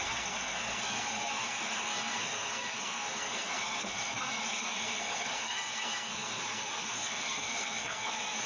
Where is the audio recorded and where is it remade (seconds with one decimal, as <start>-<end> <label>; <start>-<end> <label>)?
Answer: 0.0-8.5 remade